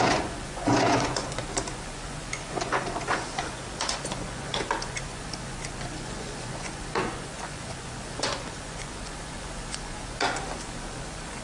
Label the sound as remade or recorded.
remade